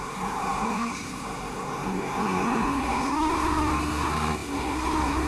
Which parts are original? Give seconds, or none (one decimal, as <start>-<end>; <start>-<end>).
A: none